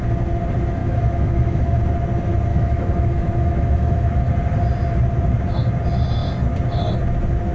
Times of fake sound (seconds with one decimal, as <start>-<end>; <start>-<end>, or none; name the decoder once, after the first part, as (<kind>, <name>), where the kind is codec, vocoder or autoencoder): 0.8-1.8 (autoencoder, DAC-VAE); 2.5-4.2